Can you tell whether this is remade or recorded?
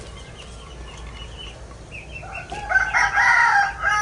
recorded